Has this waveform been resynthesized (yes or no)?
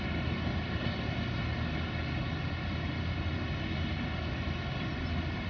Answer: no